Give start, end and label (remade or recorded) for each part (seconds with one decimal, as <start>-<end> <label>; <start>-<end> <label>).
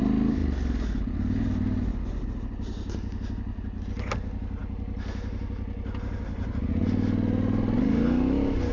0.0-8.7 recorded